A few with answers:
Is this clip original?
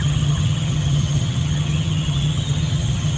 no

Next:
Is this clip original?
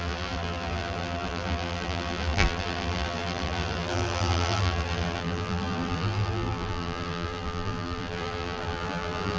no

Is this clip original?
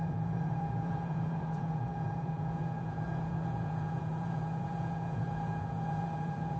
no